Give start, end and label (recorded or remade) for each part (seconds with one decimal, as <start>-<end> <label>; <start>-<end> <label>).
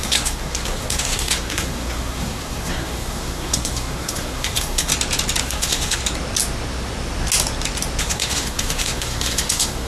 0.0-4.9 remade; 4.9-5.4 recorded; 5.4-6.0 remade; 6.0-8.0 recorded; 8.0-9.9 remade